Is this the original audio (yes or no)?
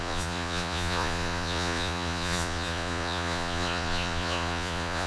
no